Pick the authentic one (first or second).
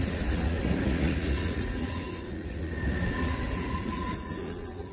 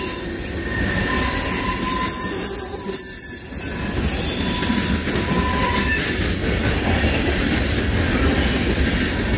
second